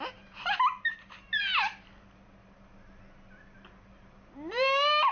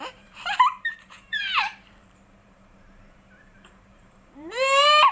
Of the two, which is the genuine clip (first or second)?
first